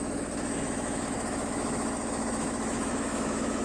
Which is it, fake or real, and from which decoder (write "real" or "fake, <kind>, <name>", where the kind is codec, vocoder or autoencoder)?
fake, autoencoder, DAC-VAE